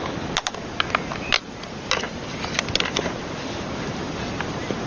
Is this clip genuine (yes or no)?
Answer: yes